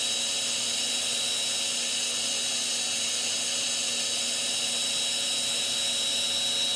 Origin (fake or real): real